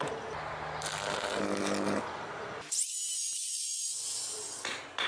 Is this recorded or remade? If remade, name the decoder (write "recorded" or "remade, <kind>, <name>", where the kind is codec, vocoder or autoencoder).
recorded